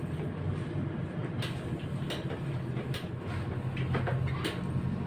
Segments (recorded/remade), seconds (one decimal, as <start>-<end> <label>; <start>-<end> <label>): 0.0-5.1 recorded